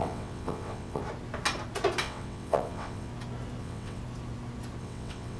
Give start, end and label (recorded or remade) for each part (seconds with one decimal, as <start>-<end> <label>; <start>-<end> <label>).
0.0-1.0 remade; 1.0-2.0 recorded; 2.0-3.1 remade; 3.1-3.6 recorded; 3.6-4.0 remade; 4.0-4.8 recorded; 4.8-5.4 remade

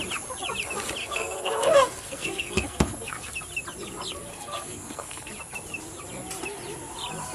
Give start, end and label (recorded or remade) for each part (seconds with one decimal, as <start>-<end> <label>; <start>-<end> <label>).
0.0-1.0 recorded; 1.0-3.3 remade; 3.3-4.3 recorded; 4.3-5.3 remade; 5.3-7.3 recorded